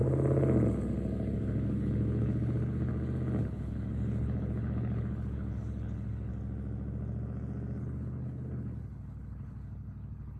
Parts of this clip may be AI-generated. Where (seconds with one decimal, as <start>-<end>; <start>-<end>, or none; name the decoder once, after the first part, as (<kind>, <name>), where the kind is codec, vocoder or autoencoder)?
1.3-2.9 (codec, HILCodec); 3.4-6.3; 7.8-10.4